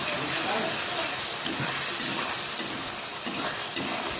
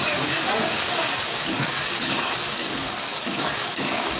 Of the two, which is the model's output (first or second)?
second